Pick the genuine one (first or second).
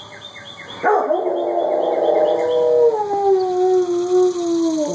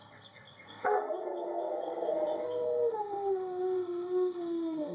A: first